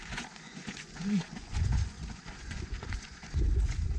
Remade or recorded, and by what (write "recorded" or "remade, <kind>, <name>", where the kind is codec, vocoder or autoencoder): remade, vocoder, Vocos